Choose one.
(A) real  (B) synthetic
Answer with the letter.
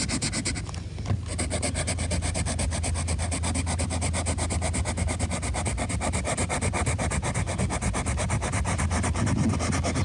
A